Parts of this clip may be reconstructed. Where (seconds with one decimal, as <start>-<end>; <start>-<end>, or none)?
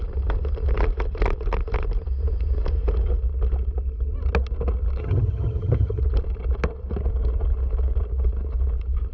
5.0-6.0